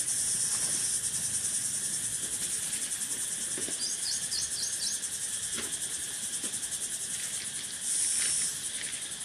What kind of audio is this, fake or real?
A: real